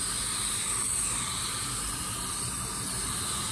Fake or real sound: real